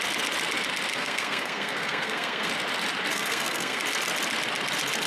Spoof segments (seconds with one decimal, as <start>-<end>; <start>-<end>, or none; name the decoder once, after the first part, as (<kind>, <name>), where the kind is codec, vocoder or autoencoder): 0.9-2.5 (codec, SNAC); 3.1-3.8